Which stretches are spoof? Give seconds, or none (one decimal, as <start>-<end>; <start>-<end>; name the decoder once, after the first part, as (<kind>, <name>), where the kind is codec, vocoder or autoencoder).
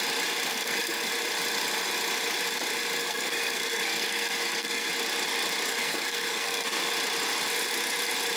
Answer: 0.5-1.1 (codec, SNAC); 3.0-4.9; 5.7-6.9